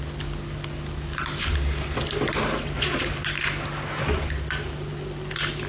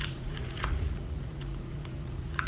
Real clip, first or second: first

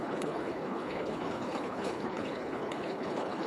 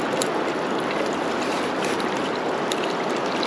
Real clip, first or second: second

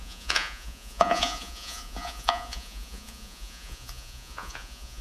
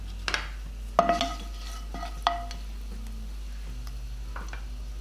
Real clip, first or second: second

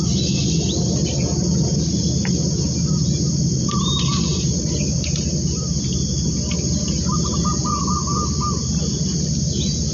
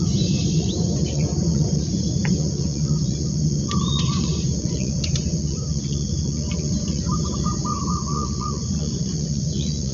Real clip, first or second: first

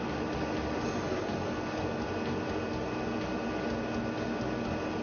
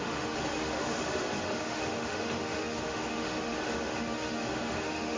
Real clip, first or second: first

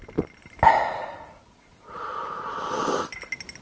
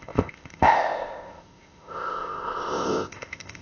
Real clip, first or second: first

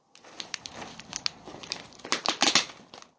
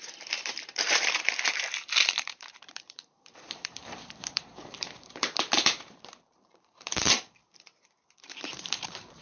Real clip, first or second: first